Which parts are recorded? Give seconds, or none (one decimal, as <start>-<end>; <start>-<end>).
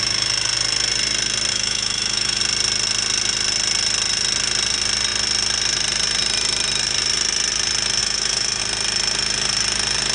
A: 0.0-1.5; 2.4-8.0; 8.6-10.1